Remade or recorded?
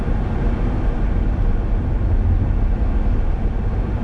recorded